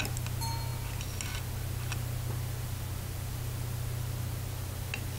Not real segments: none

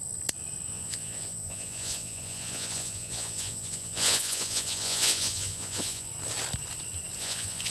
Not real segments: 0.7-6.1 (vocoder, Vocos); 7.2-7.7

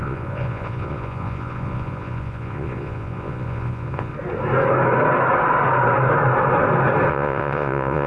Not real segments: 0.0-4.1 (vocoder, Vocos); 7.1-8.1

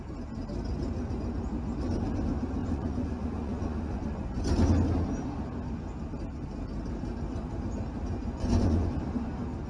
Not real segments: 2.6-4.4 (vocoder, Vocos); 8.2-8.9

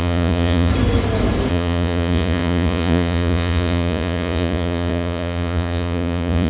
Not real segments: 0.0-0.7 (vocoder, Vocos); 1.5-6.5

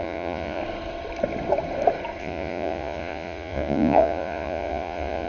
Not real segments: 0.0-0.6 (vocoder, Vocos); 2.2-5.3